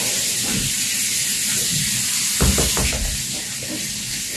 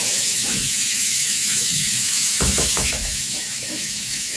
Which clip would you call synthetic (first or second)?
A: second